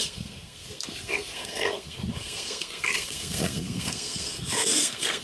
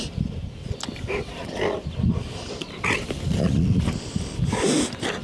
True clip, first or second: second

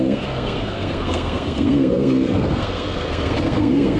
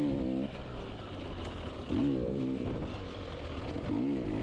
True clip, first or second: second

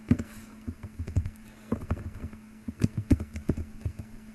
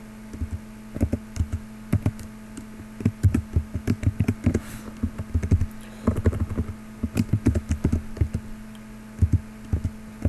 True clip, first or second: second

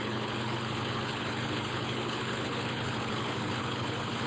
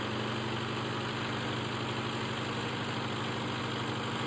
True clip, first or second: second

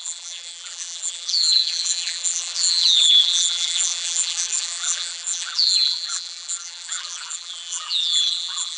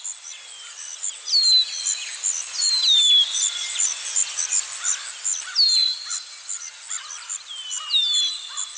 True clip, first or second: second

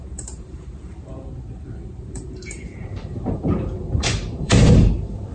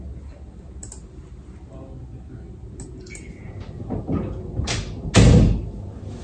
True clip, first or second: second